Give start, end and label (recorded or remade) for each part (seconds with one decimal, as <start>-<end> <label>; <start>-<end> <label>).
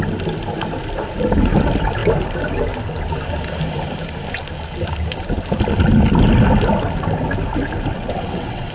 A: 0.0-7.9 recorded; 7.9-8.7 remade